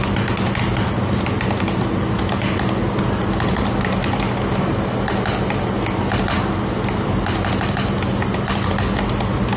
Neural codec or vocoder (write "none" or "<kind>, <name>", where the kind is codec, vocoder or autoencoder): none